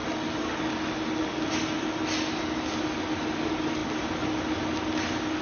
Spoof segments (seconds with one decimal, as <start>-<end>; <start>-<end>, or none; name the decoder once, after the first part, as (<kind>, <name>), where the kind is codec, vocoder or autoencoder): none